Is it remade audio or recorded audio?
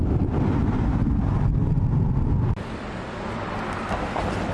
recorded